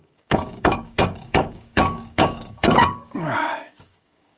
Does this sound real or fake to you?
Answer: fake